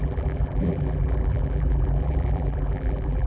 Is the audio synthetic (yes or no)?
yes